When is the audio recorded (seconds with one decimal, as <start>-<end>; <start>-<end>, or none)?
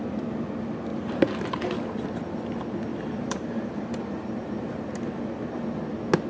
0.0-0.9; 1.5-2.9; 5.6-6.3